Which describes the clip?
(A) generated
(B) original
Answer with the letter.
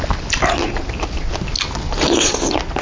B